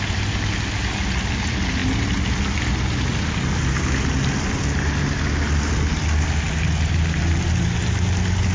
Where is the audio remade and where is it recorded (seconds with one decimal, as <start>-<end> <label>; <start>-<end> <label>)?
0.0-8.5 recorded